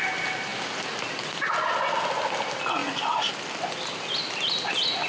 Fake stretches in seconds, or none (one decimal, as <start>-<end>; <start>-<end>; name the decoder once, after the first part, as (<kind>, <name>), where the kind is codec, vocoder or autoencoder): none

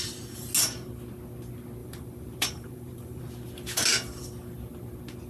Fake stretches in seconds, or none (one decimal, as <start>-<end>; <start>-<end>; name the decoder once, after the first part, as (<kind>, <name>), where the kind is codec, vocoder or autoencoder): 1.8-3.2 (vocoder, BigVGAN v2)

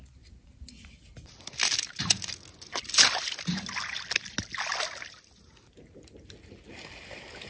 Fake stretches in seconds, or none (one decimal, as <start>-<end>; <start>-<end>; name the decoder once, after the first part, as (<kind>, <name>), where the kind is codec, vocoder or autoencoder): none

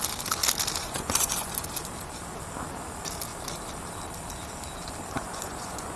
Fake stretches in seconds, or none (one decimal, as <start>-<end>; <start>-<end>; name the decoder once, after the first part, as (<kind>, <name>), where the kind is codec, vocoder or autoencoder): 0.8-1.5 (vocoder, Vocos); 5.2-6.0

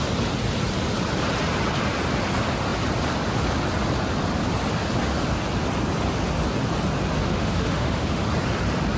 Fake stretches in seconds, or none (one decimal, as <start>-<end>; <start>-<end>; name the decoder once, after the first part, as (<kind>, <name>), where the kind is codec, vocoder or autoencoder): 7.2-8.2 (autoencoder, DAC-VAE)

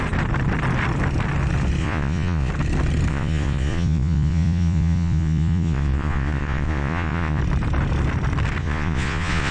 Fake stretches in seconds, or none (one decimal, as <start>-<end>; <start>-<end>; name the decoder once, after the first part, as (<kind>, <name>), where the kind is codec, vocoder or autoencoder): 1.8-2.5 (vocoder, Vocos); 3.1-7.4; 8.6-9.5

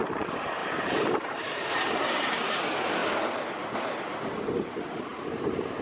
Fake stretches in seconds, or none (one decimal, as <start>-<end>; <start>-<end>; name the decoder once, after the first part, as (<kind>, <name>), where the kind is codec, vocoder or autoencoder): 0.6-2.6 (vocoder, BigVGAN v2); 5.1-5.8